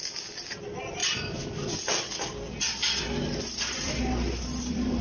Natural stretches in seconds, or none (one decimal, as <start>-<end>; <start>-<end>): 0.0-1.0; 4.0-5.0